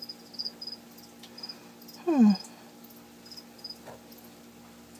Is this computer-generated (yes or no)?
no